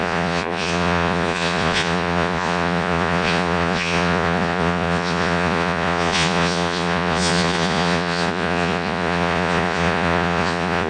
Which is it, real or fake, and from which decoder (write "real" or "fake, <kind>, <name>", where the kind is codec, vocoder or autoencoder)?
fake, vocoder, Vocos